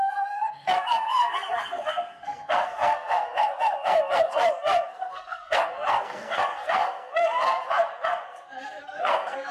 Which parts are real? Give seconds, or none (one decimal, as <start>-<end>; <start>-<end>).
none

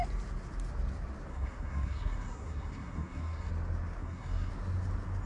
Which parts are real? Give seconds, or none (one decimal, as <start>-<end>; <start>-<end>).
0.0-1.3; 3.5-4.0; 4.5-5.3

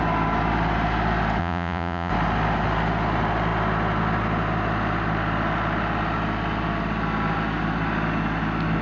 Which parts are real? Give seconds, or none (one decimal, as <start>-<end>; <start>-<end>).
0.0-1.4; 2.1-8.8

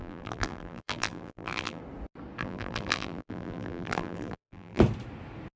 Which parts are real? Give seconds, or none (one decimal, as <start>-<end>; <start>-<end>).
1.8-2.4; 4.8-5.6

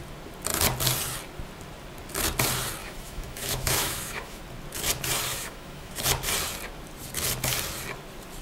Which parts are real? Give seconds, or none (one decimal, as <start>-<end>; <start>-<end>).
0.0-2.8; 4.4-5.3; 5.9-8.4